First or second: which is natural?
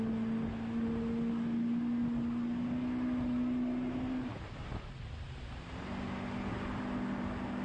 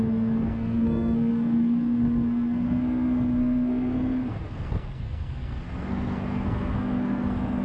first